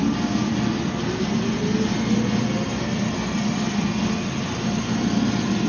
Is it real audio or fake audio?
real